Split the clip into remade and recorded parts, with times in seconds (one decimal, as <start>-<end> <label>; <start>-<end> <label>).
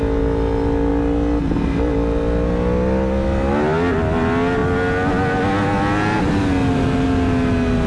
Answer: 0.0-7.9 recorded